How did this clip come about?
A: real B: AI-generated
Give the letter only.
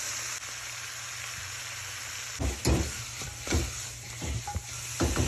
A